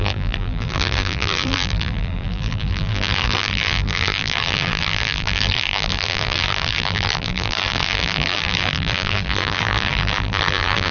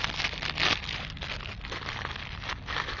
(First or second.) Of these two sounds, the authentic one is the second